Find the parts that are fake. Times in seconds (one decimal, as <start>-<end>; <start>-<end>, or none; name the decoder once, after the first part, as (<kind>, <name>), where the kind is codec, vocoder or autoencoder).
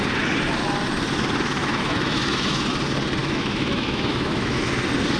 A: 1.6-2.7 (autoencoder, DAC-VAE); 3.2-4.6